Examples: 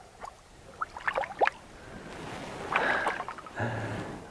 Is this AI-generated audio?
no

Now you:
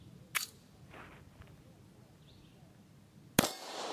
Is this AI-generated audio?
no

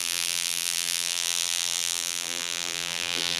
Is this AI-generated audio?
yes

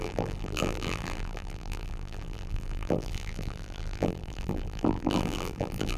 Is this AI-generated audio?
yes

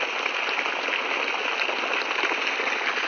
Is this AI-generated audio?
no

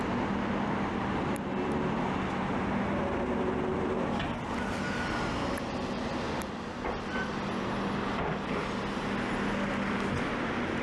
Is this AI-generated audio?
no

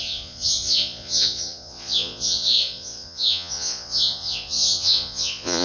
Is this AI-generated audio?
yes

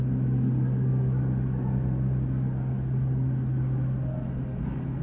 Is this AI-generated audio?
no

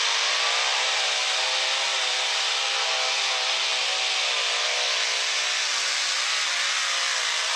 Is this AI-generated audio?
no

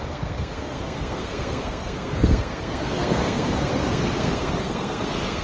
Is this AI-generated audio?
yes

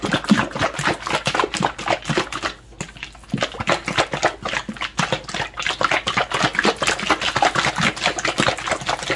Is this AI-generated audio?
no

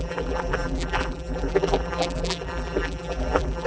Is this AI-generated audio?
yes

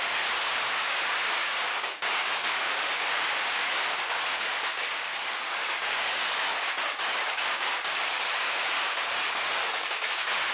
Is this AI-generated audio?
yes